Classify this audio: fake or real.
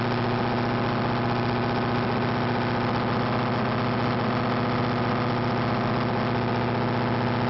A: real